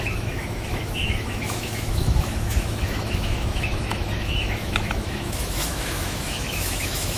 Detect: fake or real fake